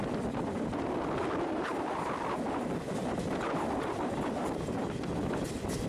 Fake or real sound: real